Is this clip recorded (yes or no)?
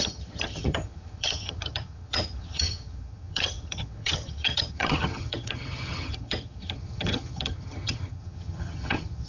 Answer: no